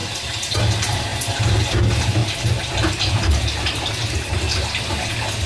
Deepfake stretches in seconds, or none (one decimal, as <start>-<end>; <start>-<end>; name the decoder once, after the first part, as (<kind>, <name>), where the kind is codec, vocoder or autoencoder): none